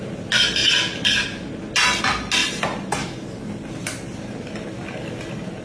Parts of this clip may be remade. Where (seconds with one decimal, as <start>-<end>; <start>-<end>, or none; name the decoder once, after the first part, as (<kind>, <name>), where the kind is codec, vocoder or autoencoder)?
none